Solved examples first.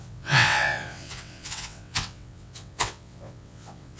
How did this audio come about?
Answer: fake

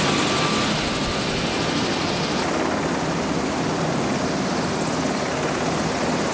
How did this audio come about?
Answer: real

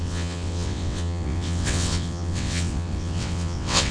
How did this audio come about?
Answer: fake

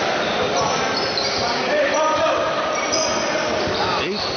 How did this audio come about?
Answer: real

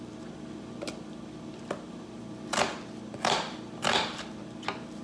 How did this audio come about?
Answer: real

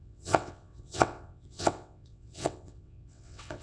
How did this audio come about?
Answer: fake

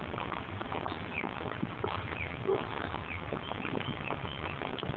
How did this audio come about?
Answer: fake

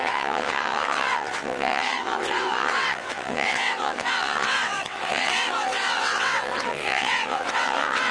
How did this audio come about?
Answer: fake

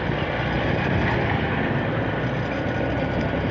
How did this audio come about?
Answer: real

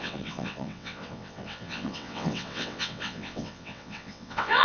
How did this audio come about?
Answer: fake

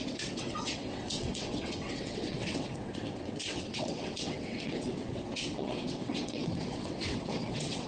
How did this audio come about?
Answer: fake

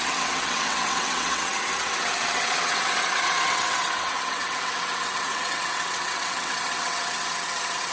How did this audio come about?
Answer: fake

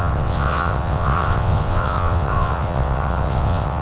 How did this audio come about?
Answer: fake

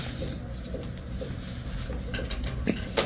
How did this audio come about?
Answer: real